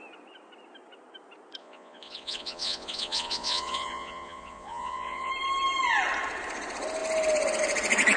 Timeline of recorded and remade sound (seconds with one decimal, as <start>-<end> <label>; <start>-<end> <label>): 0.0-1.6 recorded; 1.6-5.3 remade; 5.3-8.2 recorded